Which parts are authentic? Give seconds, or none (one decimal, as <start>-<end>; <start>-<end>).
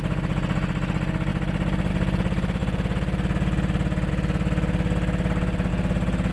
0.0-6.3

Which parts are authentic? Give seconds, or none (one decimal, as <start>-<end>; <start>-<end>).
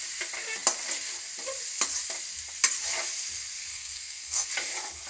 0.0-3.7; 4.5-5.1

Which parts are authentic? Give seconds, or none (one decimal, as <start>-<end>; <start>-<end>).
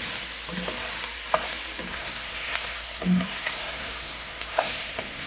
0.0-1.9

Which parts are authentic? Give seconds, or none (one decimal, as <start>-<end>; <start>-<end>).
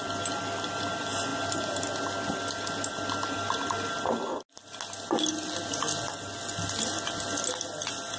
0.0-8.2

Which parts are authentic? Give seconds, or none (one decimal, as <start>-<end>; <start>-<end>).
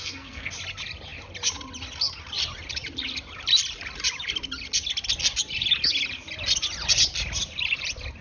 0.5-8.2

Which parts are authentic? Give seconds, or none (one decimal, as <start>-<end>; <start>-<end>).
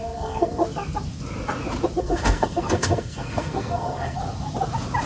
0.6-2.0; 4.2-5.1